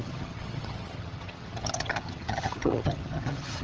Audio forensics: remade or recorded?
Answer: remade